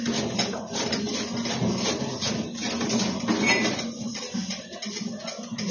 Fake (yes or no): no